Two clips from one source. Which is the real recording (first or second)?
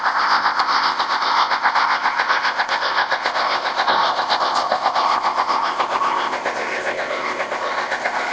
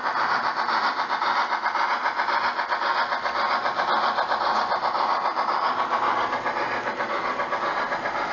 second